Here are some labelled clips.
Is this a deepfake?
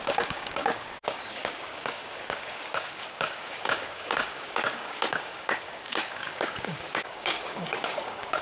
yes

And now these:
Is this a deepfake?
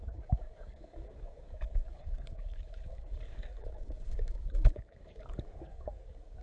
yes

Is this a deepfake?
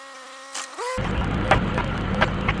no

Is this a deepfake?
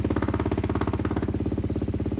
no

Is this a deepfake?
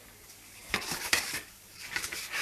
yes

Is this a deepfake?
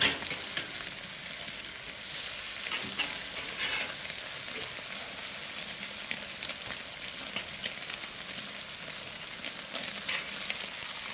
no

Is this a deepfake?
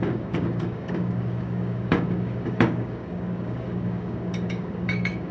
yes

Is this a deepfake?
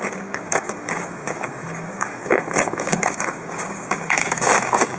yes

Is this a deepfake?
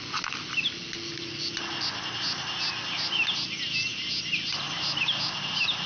no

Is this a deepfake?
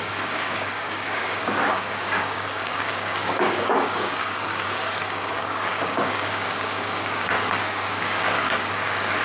yes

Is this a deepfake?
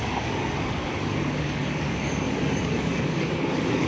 yes